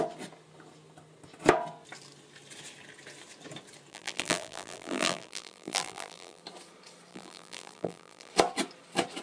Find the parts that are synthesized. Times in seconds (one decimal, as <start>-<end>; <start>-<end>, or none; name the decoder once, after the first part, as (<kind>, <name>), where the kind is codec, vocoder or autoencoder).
3.9-6.4 (vocoder, BigVGAN v2); 7.1-8.3